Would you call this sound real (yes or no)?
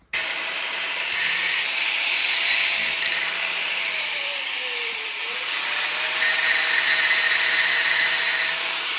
no